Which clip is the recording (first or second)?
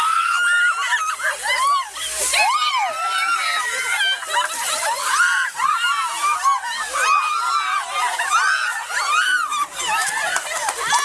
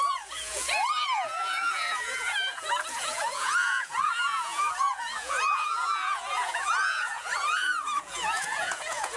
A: first